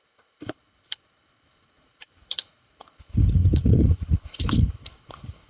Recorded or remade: remade